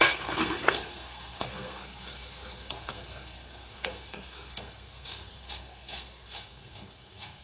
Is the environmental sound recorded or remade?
remade